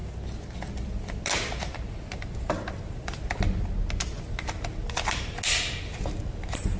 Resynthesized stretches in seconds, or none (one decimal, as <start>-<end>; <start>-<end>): none